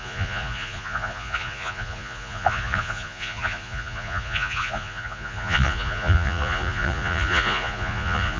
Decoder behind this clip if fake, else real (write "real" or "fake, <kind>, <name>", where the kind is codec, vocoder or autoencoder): fake, vocoder, Vocos